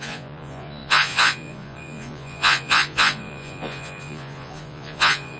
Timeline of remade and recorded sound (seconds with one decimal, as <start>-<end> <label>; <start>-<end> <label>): 0.0-5.4 remade